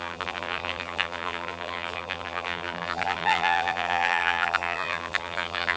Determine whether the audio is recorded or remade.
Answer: remade